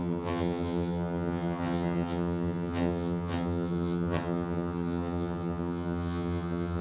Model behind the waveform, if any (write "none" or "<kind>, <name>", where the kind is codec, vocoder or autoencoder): vocoder, HiFi-GAN